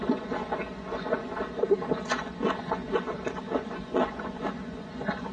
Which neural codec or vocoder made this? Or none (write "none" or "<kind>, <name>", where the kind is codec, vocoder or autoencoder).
vocoder, Vocos